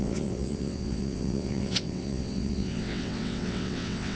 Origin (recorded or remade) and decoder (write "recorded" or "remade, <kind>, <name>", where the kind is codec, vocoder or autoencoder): remade, vocoder, WaveNeXt